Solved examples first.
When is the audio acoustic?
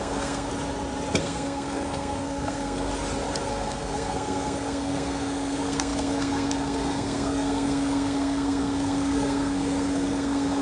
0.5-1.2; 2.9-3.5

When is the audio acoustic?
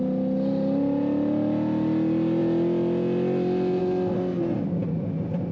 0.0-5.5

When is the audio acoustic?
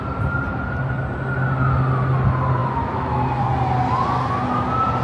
0.0-2.6; 3.4-5.0